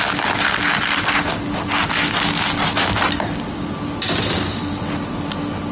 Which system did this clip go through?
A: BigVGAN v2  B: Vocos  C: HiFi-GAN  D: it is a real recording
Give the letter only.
D